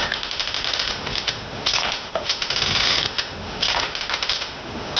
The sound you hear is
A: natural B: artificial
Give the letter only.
B